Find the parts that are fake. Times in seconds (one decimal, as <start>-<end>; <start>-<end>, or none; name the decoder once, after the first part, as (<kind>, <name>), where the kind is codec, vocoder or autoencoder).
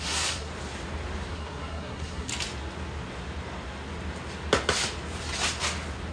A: 0.0-0.5 (codec, SNAC); 1.3-2.3